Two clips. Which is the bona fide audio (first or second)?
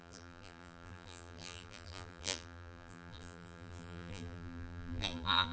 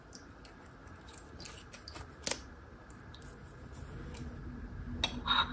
second